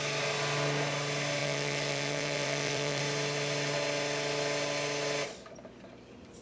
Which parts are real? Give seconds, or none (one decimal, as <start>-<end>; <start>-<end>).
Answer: 0.0-1.4; 3.0-6.4